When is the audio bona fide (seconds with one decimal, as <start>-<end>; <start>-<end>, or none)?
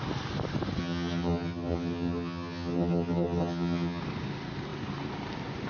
0.0-0.8; 4.0-5.7